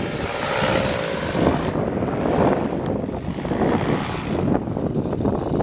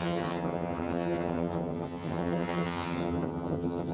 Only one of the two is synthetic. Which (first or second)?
second